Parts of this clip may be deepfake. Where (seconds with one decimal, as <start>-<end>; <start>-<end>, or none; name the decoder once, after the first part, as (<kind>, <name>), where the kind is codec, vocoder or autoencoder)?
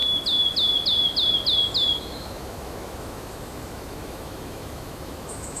2.0-5.6 (autoencoder, DAC-VAE)